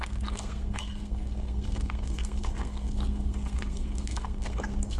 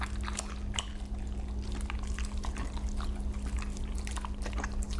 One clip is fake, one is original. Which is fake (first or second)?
first